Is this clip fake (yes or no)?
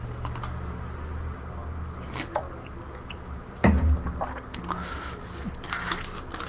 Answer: no